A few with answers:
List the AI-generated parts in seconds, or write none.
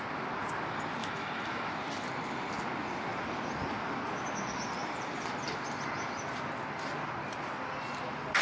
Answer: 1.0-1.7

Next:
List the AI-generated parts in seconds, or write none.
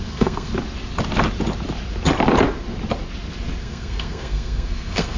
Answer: 0.0-0.5; 3.6-5.2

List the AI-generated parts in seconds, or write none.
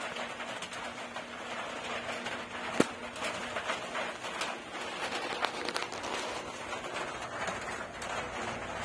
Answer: none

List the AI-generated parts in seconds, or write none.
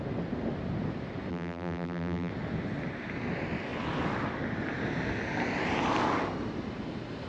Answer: 1.3-2.3